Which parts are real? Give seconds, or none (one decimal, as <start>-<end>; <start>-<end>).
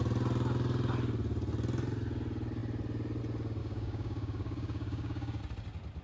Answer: 0.0-3.6; 5.4-6.0